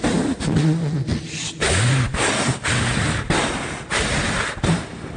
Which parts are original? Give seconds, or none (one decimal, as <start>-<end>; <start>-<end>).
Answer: 0.0-5.2